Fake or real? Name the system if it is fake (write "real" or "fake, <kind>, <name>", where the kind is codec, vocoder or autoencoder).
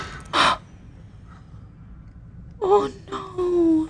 real